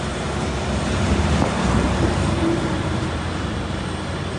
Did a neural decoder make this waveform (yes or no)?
yes